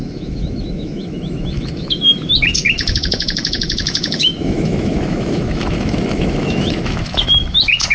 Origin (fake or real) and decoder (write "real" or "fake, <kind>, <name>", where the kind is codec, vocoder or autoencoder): fake, autoencoder, DAC-VAE